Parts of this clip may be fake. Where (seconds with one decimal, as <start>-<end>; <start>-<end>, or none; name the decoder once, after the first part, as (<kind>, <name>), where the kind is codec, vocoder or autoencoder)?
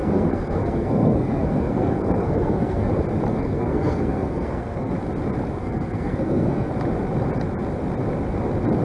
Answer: 0.0-2.9 (codec, SNAC); 3.3-4.9; 5.6-6.7